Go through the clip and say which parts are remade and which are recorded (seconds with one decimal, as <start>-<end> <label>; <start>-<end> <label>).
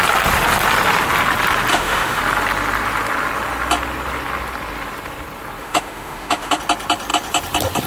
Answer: 0.0-1.7 recorded; 1.7-2.2 remade; 2.2-5.6 recorded; 5.6-6.6 remade; 6.6-7.9 recorded